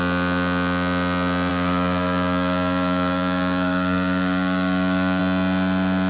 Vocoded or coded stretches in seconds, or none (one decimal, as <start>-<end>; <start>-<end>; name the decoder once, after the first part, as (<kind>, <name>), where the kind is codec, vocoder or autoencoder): 1.5-5.2 (codec, DAC)